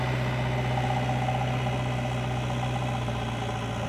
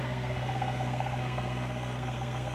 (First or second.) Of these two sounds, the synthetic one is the second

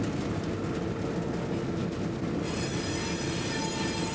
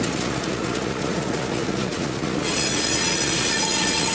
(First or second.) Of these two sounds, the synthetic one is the second